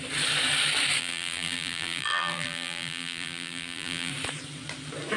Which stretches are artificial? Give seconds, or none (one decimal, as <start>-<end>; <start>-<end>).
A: 1.0-4.1